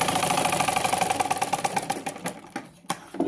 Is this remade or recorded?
recorded